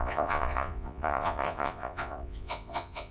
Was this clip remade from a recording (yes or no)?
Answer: yes